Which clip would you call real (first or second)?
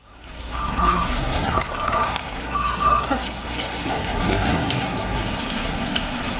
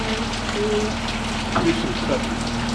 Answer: second